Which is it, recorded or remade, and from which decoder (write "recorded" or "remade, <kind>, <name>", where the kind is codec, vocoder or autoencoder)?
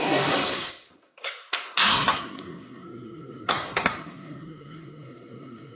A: remade, codec, SNAC